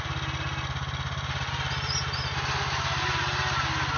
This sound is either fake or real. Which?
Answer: real